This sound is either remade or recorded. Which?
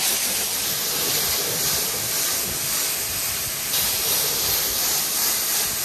recorded